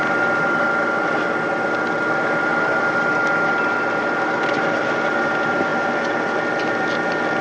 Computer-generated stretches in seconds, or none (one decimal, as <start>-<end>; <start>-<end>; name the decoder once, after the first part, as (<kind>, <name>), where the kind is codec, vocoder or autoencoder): none